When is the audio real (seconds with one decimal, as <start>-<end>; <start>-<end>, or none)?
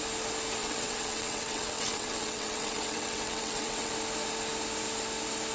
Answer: 0.0-0.6; 3.9-5.5